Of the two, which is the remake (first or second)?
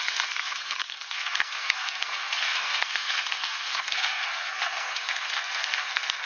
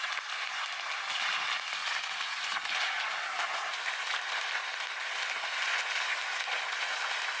first